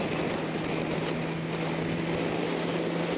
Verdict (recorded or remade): recorded